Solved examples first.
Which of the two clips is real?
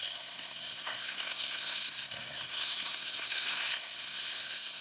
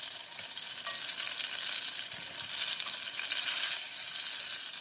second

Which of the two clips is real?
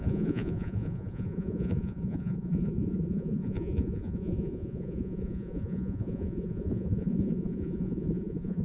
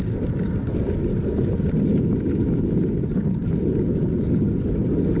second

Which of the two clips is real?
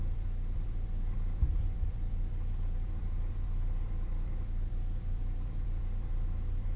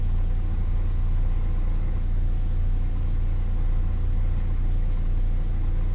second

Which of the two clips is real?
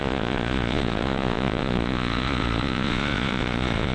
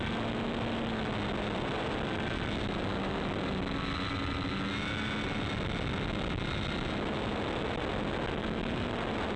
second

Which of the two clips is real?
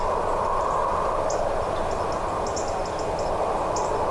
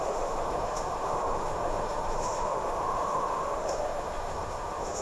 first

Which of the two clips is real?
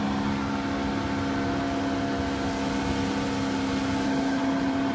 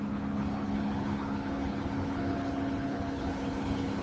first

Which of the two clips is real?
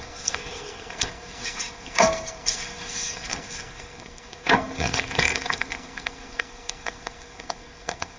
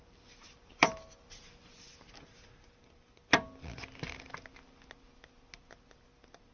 second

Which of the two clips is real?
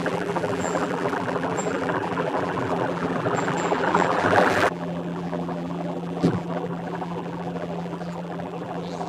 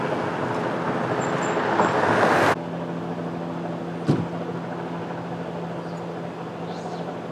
second